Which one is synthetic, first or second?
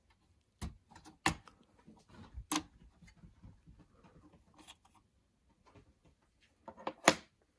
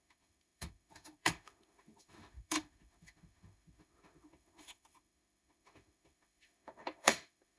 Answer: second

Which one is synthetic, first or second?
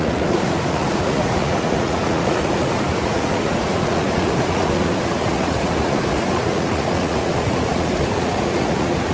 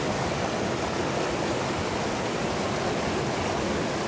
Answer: first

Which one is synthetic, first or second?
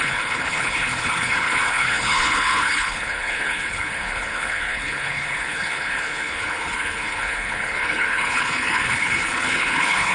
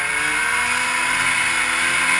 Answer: first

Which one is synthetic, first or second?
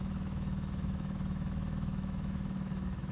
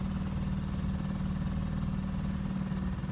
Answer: first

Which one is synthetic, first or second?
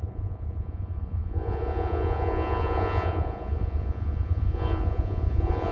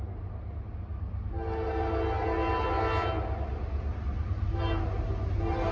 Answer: first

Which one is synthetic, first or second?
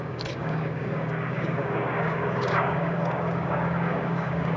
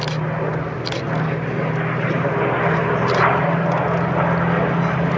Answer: first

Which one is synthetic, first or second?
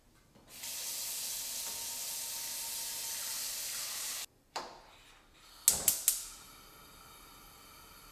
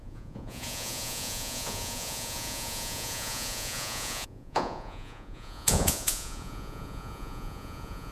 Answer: second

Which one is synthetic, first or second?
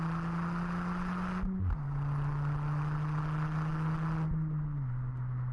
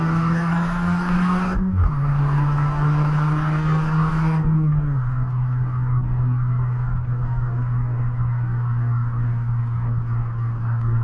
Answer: second